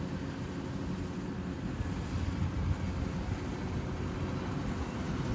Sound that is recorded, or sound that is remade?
recorded